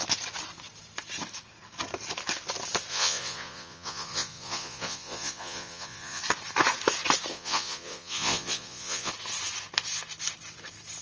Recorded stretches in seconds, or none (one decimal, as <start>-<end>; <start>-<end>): 0.0-2.9; 6.2-7.3; 9.1-11.0